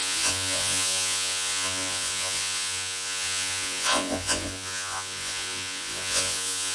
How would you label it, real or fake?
fake